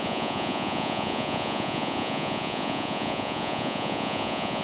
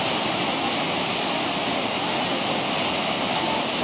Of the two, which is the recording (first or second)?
second